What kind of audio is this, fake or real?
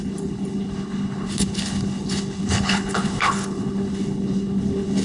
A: fake